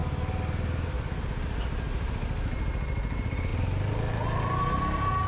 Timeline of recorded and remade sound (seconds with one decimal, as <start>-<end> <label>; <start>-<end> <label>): 0.0-5.3 recorded